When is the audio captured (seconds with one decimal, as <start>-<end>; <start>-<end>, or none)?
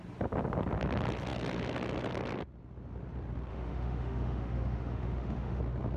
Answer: 0.0-3.5; 5.6-6.0